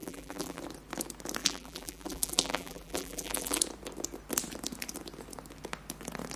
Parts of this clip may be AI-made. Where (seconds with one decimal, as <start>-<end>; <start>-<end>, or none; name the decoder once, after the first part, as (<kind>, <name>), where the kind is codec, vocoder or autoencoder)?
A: 0.0-0.6 (vocoder, BigVGAN v2); 1.4-3.6